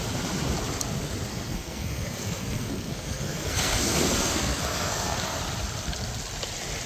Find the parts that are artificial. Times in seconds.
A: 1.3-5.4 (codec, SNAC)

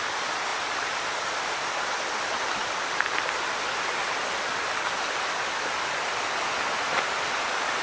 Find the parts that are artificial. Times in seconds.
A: none

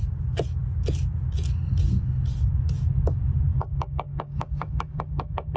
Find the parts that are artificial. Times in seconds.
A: 3.5-5.6 (codec, DAC)

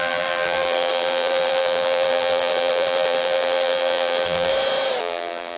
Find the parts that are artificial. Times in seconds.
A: 0.0-4.5 (vocoder, BigVGAN v2); 5.0-5.6

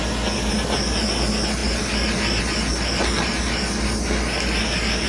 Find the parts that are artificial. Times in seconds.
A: none

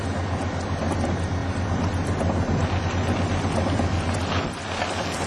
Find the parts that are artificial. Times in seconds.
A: none

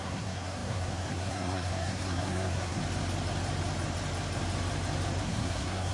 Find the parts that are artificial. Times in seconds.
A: 0.0-2.8 (codec, SNAC); 5.2-5.9

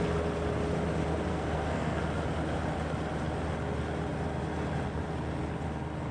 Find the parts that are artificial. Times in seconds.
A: 1.3-2.0 (codec, SNAC)